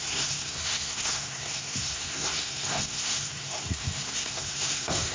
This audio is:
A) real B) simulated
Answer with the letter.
B